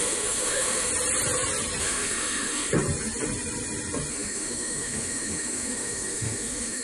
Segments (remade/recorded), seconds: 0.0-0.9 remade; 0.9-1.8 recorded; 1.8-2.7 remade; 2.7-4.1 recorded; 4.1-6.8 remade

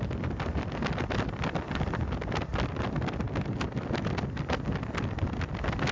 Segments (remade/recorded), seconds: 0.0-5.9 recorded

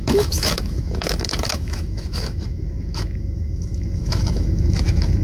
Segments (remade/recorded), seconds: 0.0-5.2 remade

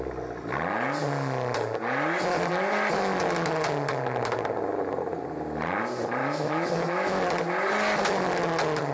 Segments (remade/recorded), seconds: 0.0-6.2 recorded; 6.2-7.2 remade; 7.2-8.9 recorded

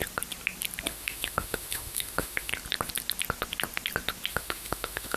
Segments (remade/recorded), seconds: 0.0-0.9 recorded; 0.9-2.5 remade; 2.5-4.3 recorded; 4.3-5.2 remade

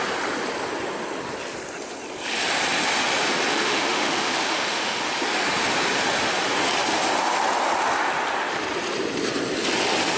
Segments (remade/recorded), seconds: 0.0-3.5 recorded; 3.5-5.0 remade; 5.0-10.2 recorded

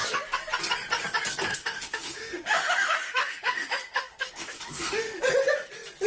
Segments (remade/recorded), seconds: 0.0-1.5 recorded; 1.5-5.2 remade; 5.2-6.1 recorded

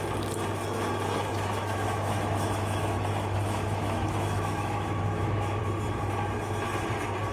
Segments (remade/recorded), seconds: 0.0-1.3 recorded; 1.3-5.6 remade; 5.6-7.3 recorded